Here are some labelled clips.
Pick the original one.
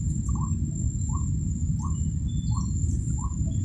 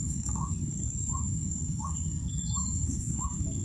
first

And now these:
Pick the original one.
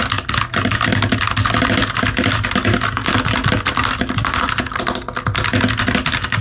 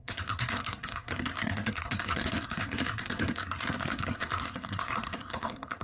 first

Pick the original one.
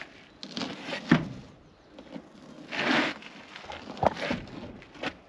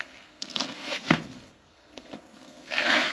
first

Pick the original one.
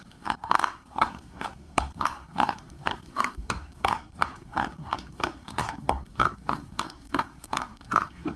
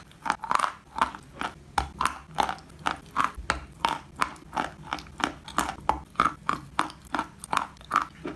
second